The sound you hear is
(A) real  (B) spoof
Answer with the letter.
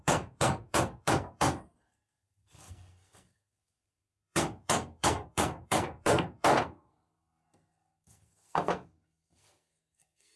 B